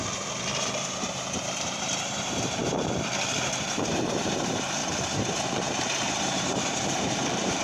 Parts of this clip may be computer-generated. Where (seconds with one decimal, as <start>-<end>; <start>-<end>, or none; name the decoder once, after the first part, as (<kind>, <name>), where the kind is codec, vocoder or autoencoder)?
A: 0.0-7.6 (vocoder, BigVGAN v2)